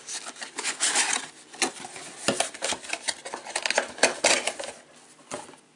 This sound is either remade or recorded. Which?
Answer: recorded